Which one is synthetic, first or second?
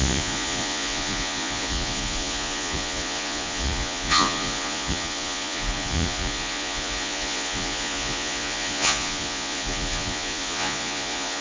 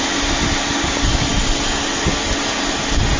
first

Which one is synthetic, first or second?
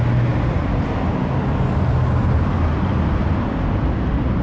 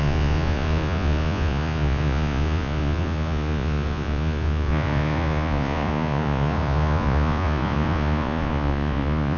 second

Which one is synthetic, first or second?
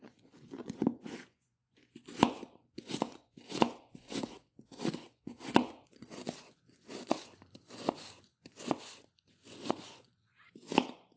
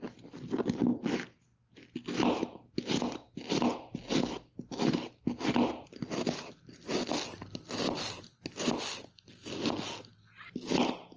first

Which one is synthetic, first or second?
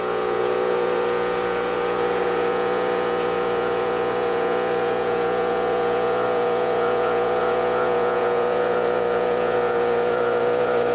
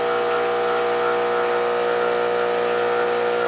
first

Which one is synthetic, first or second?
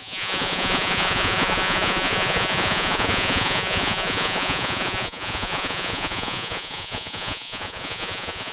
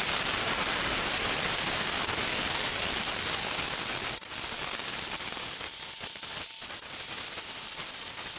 first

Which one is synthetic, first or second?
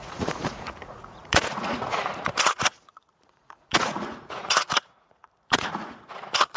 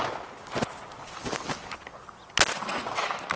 first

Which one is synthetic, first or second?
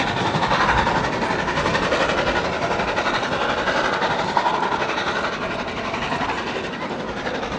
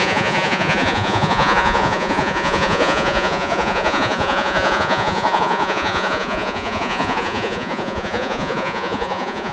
second